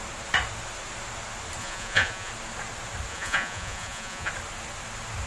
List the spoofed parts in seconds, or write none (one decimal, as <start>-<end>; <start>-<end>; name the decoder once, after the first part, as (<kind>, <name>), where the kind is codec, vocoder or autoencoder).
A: 1.6-2.3 (vocoder, Vocos); 3.1-4.3